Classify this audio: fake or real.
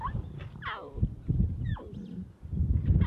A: real